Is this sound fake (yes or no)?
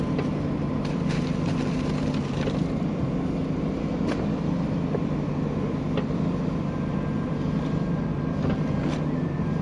no